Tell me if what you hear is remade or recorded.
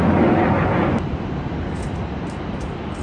recorded